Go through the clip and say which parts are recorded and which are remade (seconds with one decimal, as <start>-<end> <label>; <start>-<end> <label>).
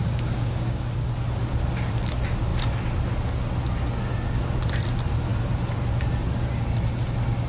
0.0-1.1 remade; 1.1-7.5 recorded